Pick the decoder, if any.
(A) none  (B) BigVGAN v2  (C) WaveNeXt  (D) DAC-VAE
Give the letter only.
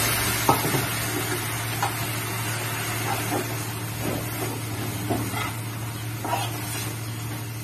A